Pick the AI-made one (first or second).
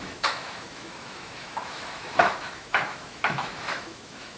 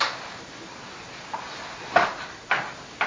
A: first